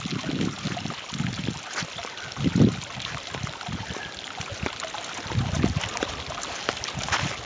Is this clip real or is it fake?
real